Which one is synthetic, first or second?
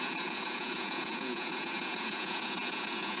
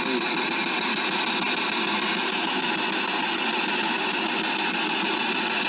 first